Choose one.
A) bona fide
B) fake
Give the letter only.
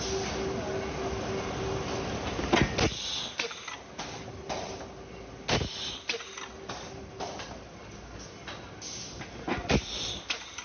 A